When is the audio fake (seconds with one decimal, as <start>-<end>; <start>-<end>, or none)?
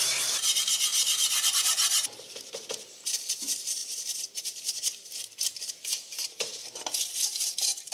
0.0-7.9